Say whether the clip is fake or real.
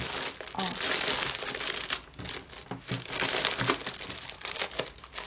real